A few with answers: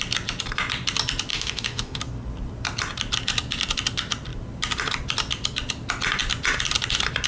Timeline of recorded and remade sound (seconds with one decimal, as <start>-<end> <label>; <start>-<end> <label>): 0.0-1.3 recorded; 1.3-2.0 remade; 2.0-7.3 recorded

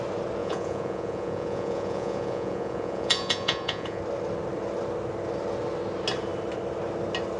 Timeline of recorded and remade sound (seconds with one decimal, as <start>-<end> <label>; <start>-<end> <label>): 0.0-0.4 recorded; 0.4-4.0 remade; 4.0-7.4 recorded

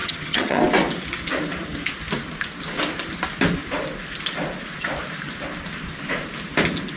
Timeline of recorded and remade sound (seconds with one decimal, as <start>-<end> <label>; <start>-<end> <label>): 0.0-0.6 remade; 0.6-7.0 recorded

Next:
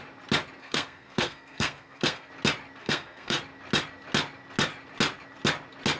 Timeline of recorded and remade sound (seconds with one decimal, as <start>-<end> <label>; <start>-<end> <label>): 0.0-0.6 recorded; 0.6-2.3 remade; 2.3-2.8 recorded; 2.8-3.4 remade; 3.4-6.0 recorded

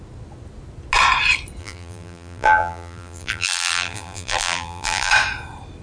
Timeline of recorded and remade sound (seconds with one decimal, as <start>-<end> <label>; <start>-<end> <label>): 0.0-1.6 recorded; 1.6-5.1 remade; 5.1-5.8 recorded